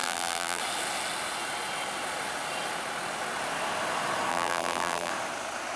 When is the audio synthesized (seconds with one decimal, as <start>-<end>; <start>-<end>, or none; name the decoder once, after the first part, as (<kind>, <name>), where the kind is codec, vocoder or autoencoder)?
0.0-0.6 (vocoder, BigVGAN v2); 4.3-5.1